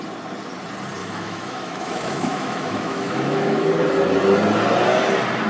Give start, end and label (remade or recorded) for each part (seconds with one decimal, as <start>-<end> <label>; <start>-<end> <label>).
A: 0.0-1.0 recorded; 1.0-3.7 remade; 3.7-5.5 recorded